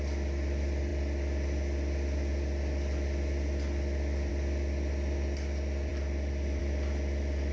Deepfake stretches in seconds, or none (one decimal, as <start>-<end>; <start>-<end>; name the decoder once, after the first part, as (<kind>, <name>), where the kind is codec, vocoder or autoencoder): none